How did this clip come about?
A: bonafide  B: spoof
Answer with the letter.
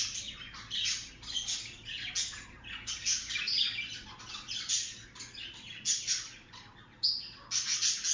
A